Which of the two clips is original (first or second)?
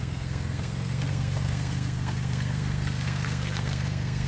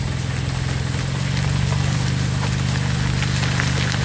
second